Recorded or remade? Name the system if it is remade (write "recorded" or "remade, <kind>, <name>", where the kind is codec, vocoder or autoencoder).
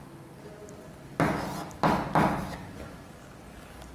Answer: recorded